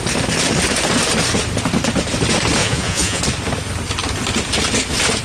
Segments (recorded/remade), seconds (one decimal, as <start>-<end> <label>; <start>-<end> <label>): 0.0-2.6 recorded; 2.6-3.2 remade; 3.2-5.2 recorded